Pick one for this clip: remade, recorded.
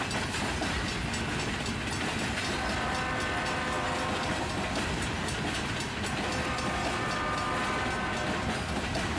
recorded